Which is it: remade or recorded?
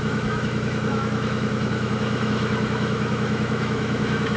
remade